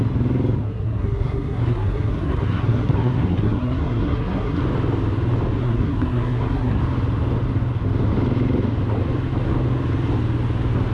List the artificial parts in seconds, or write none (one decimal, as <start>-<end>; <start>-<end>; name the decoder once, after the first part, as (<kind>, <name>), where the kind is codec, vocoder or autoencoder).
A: 0.6-4.6 (codec, SNAC); 5.6-6.8